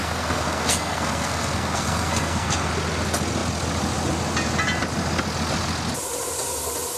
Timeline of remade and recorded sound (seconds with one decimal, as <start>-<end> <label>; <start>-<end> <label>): 0.0-2.7 remade; 2.7-7.0 recorded